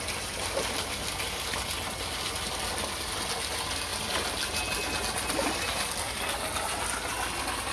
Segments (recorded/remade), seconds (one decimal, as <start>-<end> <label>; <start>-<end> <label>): 0.0-7.7 recorded